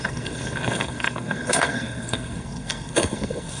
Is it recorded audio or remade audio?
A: remade